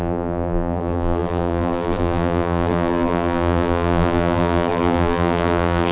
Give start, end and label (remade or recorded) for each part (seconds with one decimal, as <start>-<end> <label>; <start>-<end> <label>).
0.0-5.9 remade